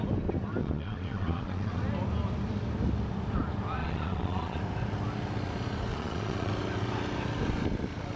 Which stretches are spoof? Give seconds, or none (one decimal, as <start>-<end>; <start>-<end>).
0.6-1.8; 3.8-4.6; 5.9-6.5